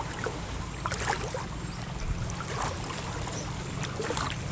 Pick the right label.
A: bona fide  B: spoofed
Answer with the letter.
A